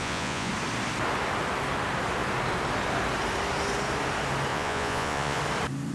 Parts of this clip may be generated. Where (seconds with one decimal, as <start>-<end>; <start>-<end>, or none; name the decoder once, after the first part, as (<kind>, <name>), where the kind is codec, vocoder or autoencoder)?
0.0-0.5 (vocoder, Vocos); 4.5-5.4